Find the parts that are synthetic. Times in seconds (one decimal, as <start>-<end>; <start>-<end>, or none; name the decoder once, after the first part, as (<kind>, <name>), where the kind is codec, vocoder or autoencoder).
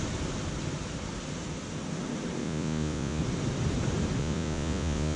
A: 2.4-3.2 (vocoder, Vocos); 4.2-5.2